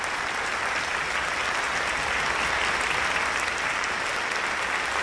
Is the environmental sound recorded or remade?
recorded